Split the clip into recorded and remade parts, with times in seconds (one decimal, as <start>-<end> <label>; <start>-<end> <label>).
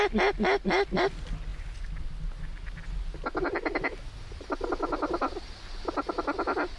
0.0-6.8 recorded